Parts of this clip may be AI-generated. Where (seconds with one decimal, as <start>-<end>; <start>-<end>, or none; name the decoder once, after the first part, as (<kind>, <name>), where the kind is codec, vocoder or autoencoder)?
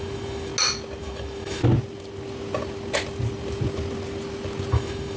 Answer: 0.0-0.5 (autoencoder, DAC-VAE); 1.0-1.6; 4.7-5.2